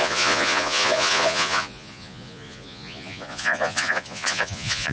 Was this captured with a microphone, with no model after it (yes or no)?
no